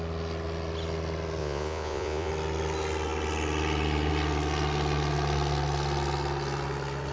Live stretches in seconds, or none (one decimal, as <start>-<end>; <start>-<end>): 0.0-1.4; 2.3-7.1